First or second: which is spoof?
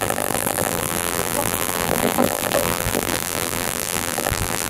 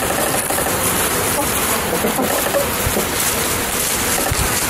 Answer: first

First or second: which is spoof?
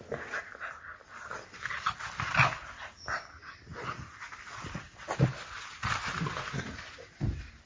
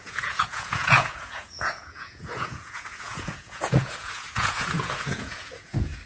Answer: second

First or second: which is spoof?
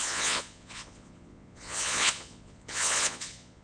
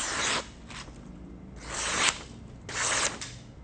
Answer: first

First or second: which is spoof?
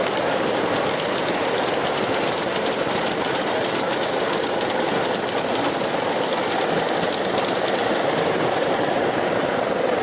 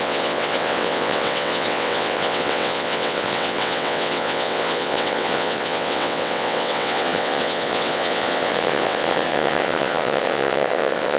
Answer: second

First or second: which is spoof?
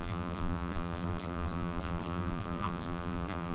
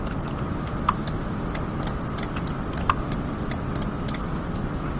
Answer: first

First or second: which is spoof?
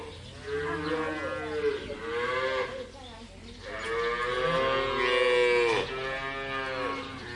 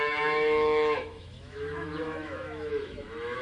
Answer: second